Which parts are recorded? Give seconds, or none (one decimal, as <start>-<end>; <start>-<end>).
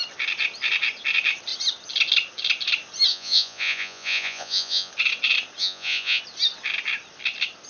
0.0-3.1; 4.9-5.6; 6.2-7.7